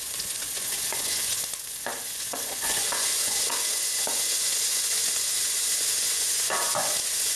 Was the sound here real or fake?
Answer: fake